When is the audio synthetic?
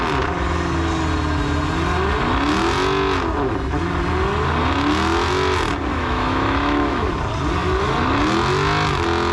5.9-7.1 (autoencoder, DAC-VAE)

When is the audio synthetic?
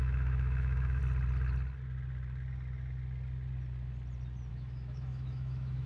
0.0-1.0 (autoencoder, DAC-VAE); 4.5-5.9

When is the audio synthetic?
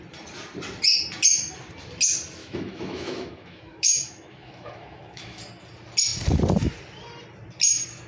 2.4-5.4 (autoencoder, DAC-VAE)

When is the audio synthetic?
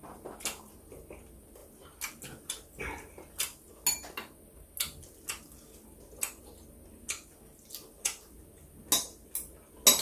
none